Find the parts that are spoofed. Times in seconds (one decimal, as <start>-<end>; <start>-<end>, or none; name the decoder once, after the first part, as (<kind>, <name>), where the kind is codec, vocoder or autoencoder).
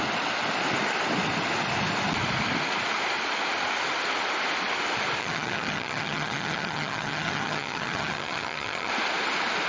5.2-8.9 (vocoder, HiFi-GAN)